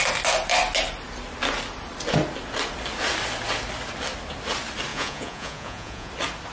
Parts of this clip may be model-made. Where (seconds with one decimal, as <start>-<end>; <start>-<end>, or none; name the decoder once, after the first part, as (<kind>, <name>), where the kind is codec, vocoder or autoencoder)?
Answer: 4.9-6.1 (vocoder, Vocos)

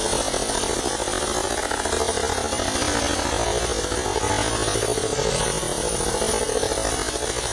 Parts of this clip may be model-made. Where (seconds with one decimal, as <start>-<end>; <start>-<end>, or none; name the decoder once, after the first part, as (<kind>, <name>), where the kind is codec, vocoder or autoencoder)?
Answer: none

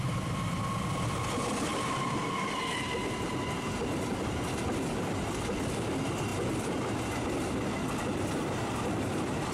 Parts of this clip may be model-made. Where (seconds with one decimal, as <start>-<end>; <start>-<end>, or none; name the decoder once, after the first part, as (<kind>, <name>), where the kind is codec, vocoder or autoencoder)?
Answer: 1.7-2.6 (vocoder, BigVGAN v2)

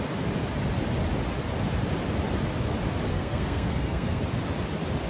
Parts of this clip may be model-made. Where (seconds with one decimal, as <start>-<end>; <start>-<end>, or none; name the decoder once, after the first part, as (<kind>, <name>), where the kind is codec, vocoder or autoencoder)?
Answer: 3.1-4.2 (codec, SNAC)

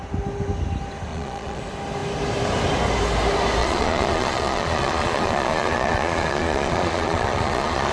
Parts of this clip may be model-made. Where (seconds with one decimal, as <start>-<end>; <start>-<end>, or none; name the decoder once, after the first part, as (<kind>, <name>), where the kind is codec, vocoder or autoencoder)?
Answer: 1.1-1.6 (vocoder, Vocos); 3.6-7.9